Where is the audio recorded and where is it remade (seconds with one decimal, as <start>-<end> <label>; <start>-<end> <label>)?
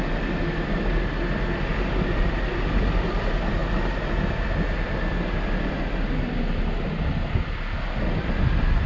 0.0-8.9 recorded